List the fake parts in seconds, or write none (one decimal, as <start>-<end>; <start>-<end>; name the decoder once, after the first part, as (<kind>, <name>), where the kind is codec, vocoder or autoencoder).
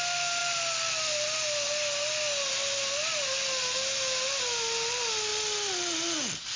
none